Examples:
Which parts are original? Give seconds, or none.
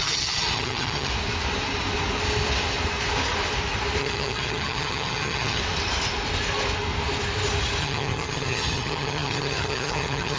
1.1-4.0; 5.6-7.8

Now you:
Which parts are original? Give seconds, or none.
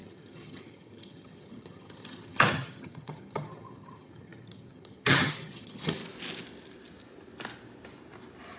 6.0-8.6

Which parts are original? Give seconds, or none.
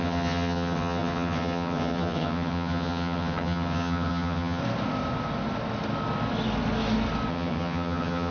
4.6-7.3